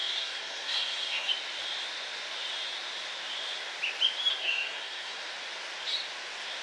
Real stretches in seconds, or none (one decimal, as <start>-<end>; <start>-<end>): 1.3-4.3; 5.2-6.6